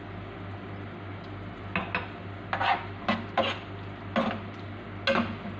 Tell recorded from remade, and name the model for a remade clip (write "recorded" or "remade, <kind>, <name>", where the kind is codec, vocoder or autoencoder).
recorded